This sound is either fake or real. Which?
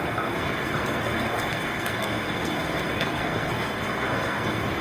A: fake